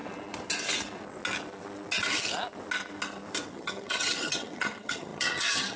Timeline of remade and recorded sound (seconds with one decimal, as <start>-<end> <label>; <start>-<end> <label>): 0.0-3.5 recorded; 3.5-5.8 remade